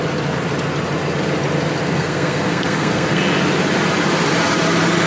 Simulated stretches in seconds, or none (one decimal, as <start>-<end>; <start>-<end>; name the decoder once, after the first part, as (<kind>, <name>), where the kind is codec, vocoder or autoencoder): 1.9-3.2 (codec, SNAC)